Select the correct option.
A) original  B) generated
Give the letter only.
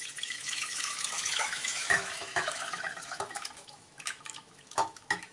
B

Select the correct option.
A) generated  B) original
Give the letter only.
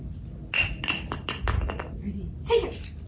B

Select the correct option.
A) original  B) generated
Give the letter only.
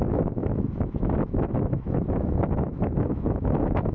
B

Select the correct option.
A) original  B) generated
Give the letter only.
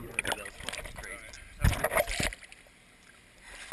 A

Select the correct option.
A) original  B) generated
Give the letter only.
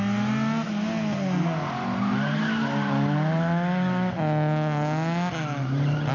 A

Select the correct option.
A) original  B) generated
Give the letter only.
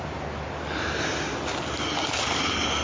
A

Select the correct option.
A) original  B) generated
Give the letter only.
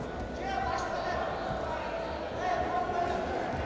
A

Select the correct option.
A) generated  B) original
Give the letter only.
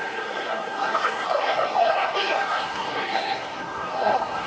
A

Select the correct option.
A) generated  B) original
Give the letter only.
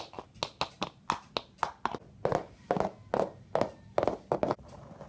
B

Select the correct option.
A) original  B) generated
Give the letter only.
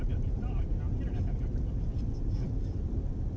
A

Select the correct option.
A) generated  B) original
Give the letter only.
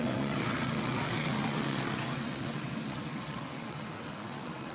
A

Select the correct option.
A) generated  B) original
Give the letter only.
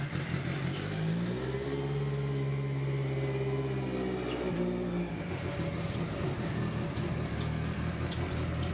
B